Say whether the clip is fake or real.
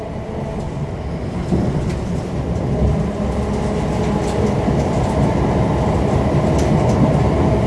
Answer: real